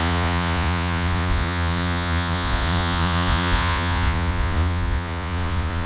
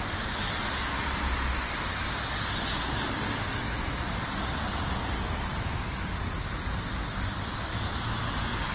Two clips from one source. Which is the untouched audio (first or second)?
second